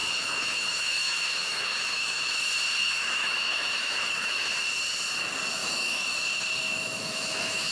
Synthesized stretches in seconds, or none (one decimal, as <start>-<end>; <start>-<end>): 0.0-2.3; 2.8-4.5; 5.6-6.3; 6.7-7.7